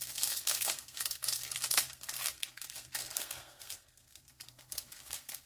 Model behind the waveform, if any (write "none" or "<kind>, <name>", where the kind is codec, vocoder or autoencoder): codec, SNAC